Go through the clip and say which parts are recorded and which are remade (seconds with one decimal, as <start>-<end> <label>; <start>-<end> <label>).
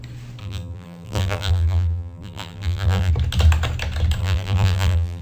0.0-0.4 recorded; 0.4-3.1 remade; 3.1-4.2 recorded; 4.2-5.2 remade